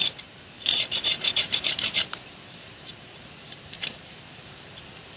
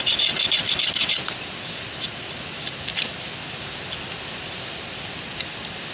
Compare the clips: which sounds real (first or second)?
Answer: second